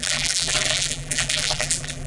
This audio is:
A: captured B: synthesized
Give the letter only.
B